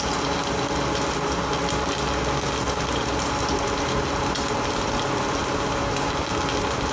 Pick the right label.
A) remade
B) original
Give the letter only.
B